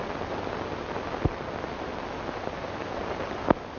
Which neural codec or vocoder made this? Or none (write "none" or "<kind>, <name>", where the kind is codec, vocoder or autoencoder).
none